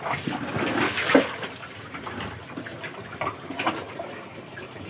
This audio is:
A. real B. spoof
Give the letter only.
A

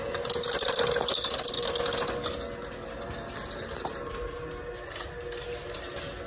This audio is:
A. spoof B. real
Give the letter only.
B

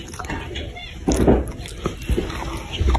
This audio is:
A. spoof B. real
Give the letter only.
B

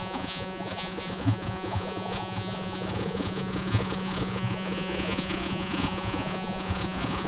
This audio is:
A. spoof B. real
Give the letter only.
A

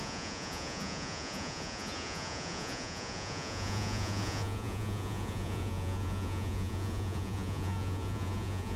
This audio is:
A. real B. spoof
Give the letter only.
B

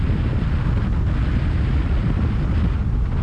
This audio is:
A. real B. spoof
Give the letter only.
A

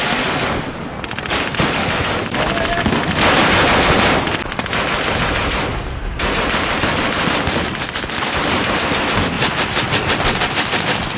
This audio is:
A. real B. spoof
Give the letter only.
A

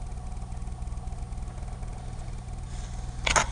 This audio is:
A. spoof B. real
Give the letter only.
B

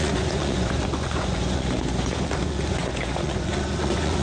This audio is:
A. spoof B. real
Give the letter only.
A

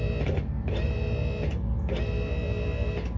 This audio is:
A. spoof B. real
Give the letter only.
B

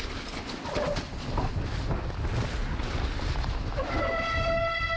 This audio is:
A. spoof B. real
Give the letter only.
B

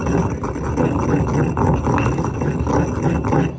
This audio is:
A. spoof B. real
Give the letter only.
B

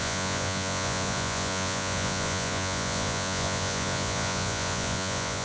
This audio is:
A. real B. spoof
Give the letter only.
B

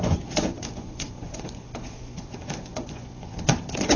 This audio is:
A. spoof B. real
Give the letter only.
A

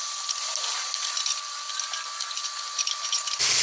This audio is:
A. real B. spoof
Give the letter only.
A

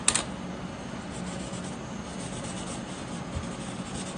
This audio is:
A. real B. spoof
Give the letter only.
A